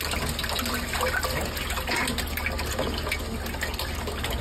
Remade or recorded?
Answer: recorded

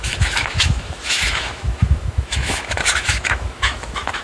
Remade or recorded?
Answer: remade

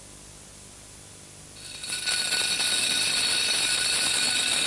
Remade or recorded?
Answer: recorded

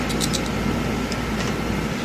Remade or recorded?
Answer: recorded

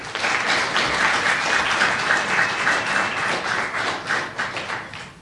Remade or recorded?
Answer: recorded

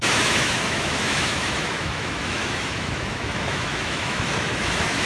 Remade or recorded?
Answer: remade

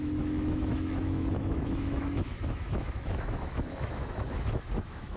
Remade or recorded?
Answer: remade